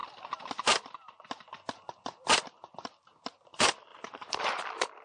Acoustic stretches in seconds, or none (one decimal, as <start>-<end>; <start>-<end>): 0.0-3.9; 4.6-5.0